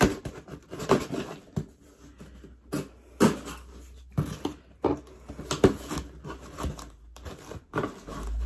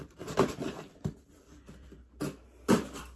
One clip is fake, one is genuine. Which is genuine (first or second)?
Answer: first